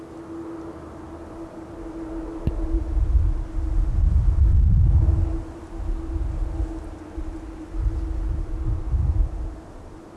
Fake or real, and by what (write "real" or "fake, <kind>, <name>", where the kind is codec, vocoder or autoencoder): real